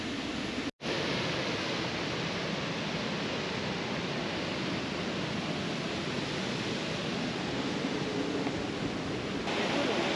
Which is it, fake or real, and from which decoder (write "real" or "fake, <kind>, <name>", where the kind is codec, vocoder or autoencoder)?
real